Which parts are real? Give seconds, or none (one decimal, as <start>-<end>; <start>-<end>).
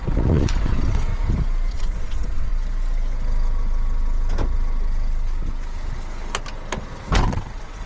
1.1-1.7; 2.5-7.2